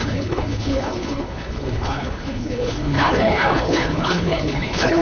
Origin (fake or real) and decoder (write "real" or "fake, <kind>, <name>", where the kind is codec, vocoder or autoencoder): fake, codec, HILCodec